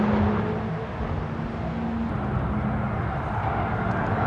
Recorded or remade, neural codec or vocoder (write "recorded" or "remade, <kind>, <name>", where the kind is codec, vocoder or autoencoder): recorded